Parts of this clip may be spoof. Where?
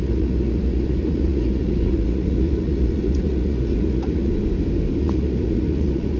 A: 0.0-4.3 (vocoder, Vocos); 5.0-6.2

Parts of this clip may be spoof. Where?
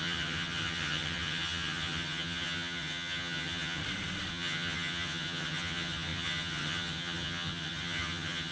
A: 0.0-3.8 (vocoder, HiFi-GAN); 4.3-8.5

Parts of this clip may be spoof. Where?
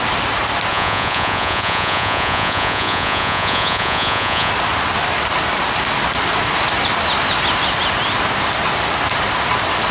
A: 0.7-4.5 (vocoder, Vocos)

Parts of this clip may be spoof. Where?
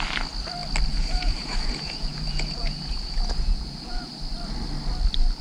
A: 0.9-4.1 (vocoder, Vocos)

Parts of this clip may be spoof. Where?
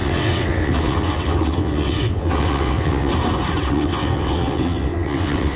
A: 0.0-3.1 (vocoder, WaveNeXt); 3.7-5.6